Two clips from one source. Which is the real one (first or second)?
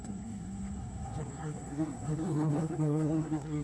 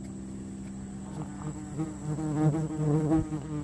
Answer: second